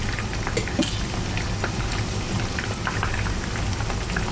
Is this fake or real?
real